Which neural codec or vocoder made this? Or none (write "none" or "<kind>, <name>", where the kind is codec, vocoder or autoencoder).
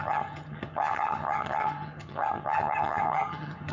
vocoder, HiFi-GAN